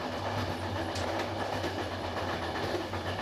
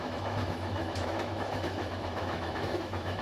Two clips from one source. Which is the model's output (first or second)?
second